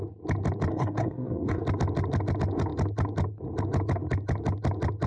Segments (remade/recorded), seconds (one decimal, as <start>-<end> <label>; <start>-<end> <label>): 0.0-0.7 recorded; 0.7-1.6 remade; 1.6-5.1 recorded